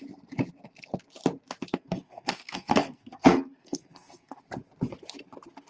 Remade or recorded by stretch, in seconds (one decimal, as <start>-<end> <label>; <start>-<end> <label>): 0.0-1.7 recorded; 1.7-4.4 remade; 4.4-5.7 recorded